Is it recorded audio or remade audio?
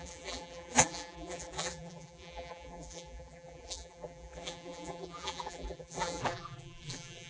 remade